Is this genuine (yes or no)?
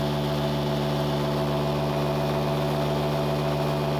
yes